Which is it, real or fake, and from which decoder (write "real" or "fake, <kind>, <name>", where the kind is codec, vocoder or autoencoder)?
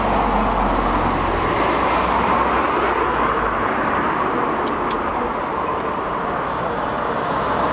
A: real